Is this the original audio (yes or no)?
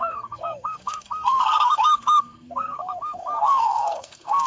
no